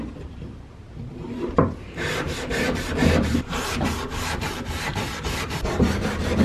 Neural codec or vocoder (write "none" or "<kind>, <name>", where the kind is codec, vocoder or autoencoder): vocoder, BigVGAN v2